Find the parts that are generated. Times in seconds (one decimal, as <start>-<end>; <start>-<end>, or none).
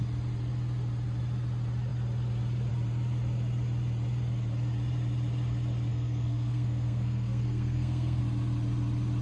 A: 5.9-8.2